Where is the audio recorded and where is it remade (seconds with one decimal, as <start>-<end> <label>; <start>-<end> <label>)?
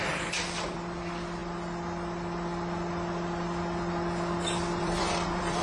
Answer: 0.0-1.4 remade; 1.4-4.8 recorded; 4.8-5.6 remade